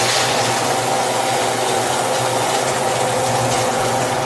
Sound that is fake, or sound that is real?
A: fake